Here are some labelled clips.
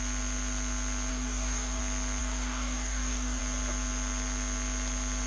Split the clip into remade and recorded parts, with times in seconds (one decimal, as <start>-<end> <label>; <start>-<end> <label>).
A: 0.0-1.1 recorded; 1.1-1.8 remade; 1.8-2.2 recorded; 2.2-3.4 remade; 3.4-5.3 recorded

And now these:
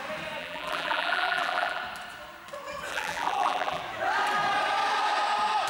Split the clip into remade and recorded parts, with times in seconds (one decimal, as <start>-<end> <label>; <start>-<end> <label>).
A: 0.0-0.4 recorded; 0.4-1.8 remade; 1.8-2.9 recorded; 2.9-3.8 remade; 3.8-5.7 recorded

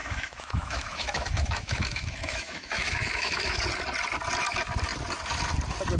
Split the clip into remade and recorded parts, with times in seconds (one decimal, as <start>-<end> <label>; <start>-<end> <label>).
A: 0.0-3.6 remade; 3.6-6.0 recorded

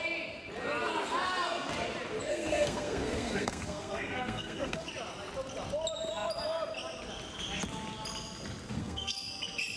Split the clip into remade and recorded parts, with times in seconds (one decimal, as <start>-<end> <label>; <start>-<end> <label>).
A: 0.0-2.3 recorded; 2.3-4.9 remade; 4.9-8.7 recorded; 8.7-9.3 remade; 9.3-9.8 recorded